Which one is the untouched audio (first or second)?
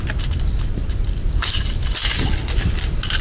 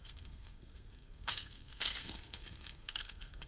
first